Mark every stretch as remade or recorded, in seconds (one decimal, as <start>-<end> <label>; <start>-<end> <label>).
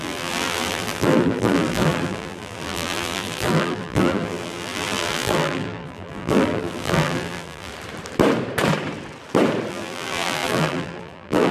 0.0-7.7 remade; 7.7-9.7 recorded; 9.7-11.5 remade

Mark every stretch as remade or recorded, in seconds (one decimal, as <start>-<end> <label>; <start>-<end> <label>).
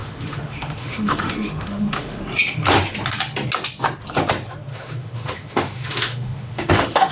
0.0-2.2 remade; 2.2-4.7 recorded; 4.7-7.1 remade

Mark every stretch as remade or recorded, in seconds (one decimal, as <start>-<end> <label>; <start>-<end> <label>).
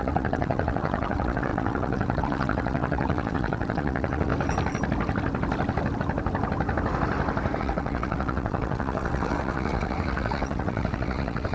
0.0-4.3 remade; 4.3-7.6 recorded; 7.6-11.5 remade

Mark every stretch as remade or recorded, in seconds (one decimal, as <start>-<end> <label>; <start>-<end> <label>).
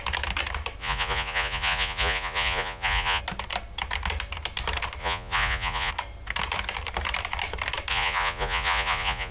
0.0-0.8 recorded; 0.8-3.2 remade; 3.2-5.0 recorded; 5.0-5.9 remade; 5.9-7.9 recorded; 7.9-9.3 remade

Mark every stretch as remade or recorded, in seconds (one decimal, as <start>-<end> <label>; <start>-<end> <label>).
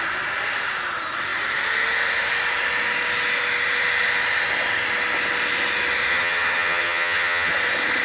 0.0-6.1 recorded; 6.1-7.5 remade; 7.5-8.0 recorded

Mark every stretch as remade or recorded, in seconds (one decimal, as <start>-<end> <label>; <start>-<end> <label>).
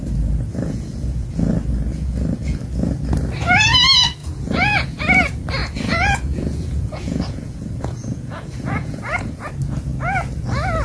0.0-0.5 recorded; 0.5-1.5 remade; 1.5-1.9 recorded; 1.9-2.6 remade; 2.6-4.2 recorded; 4.2-5.0 remade; 5.0-5.6 recorded; 5.6-9.5 remade; 9.5-10.8 recorded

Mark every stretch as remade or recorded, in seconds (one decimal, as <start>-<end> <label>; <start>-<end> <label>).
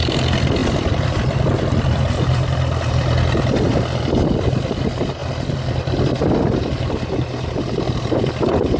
0.0-8.8 recorded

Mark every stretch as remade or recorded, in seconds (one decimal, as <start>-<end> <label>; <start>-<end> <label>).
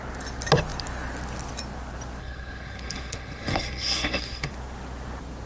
0.0-2.2 recorded; 2.2-4.5 remade; 4.5-5.5 recorded